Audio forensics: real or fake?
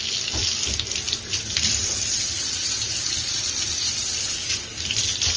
real